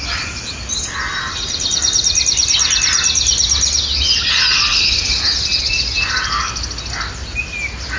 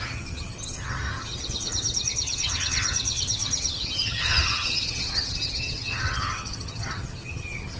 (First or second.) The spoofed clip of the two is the second